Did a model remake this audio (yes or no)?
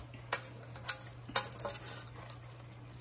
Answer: no